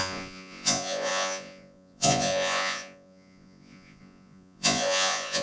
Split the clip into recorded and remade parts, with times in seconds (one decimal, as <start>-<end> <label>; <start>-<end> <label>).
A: 0.0-5.4 remade